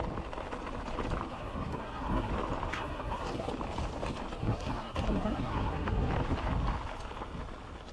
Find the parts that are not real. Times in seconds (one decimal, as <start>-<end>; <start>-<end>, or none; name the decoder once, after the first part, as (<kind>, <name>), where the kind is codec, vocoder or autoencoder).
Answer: 1.3-2.3 (codec, SNAC); 2.7-3.5; 4.4-6.1

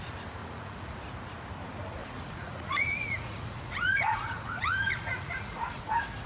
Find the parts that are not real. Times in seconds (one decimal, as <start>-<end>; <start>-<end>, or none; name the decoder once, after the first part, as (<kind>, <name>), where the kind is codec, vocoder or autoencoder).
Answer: 0.4-1.0 (vocoder, Vocos); 2.0-5.8

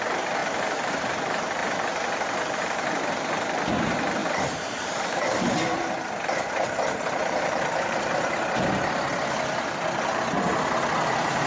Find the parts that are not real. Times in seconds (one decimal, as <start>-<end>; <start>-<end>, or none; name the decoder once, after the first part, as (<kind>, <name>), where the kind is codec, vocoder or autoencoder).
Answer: 1.6-3.1 (vocoder, BigVGAN v2); 4.2-8.1

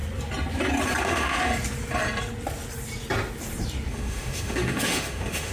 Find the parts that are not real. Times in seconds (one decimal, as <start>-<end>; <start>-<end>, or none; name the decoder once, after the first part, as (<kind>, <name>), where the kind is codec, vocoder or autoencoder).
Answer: 1.0-1.5 (autoencoder, DAC-VAE); 3.9-5.5

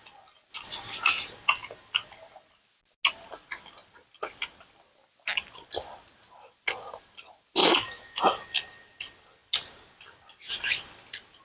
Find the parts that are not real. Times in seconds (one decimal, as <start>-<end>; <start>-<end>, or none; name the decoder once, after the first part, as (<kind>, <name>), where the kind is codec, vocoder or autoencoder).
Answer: 7.6-8.2 (autoencoder, DAC-VAE)

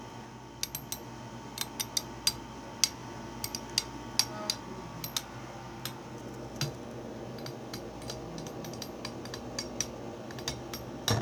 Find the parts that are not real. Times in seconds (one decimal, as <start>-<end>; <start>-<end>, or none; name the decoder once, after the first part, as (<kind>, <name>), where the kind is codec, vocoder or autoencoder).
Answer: none

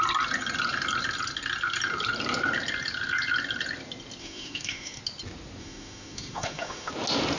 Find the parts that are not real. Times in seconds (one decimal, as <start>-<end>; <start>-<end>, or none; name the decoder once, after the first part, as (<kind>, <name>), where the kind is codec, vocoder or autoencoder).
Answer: 4.2-5.0 (autoencoder, DAC-VAE); 5.6-6.9